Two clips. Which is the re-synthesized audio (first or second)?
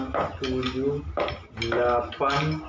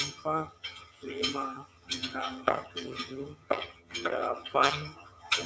second